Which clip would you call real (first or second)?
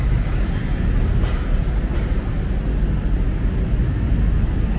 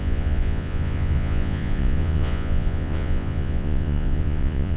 first